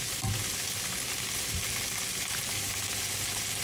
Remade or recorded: recorded